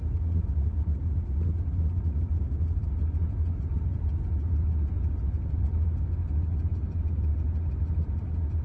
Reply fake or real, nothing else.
real